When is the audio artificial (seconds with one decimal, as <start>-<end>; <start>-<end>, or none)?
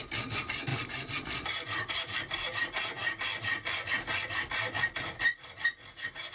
none